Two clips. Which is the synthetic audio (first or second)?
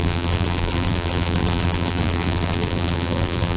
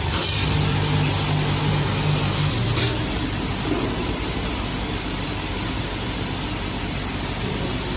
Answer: first